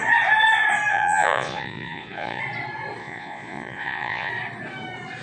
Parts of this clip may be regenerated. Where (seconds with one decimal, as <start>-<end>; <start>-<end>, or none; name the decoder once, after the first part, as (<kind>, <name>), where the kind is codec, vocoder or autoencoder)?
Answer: 0.9-2.4 (vocoder, Vocos); 3.0-4.3